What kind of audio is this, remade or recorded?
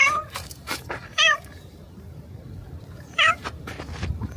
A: remade